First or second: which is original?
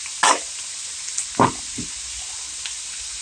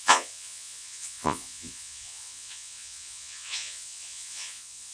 first